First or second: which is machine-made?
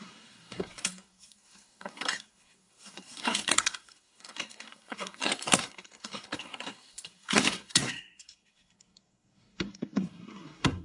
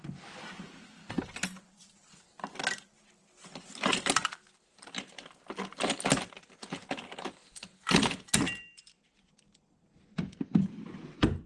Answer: first